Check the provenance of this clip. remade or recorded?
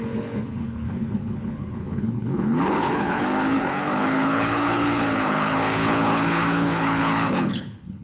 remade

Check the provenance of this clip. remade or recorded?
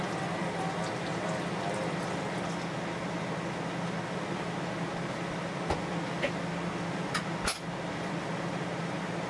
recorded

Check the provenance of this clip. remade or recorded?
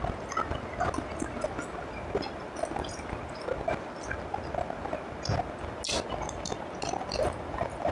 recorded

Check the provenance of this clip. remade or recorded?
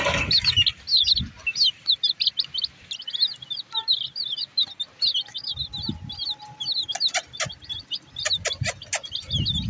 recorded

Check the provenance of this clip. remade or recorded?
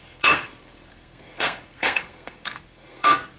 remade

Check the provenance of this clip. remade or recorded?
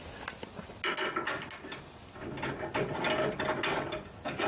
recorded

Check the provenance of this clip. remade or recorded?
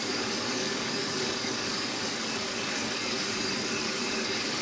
remade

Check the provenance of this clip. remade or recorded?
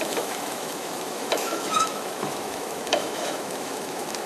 remade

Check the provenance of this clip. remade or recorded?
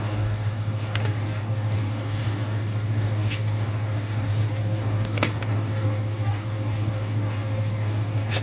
remade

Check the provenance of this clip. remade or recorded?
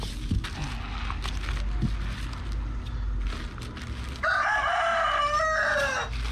recorded